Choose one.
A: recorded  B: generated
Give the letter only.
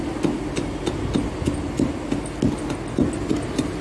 A